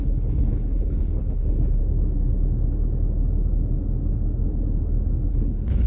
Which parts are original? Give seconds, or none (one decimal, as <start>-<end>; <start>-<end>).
1.8-5.3

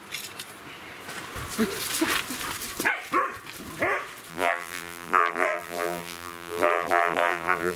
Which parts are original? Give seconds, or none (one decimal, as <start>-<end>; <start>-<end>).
0.0-4.3

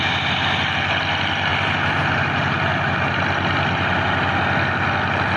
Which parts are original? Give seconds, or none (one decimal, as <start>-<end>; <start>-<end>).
0.0-5.4

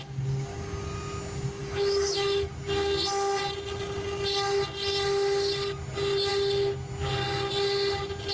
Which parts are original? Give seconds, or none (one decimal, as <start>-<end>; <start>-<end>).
0.0-1.6; 2.5-8.3

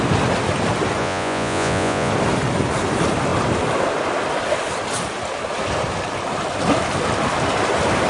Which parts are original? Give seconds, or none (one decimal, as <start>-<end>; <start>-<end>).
0.0-1.0; 2.1-8.1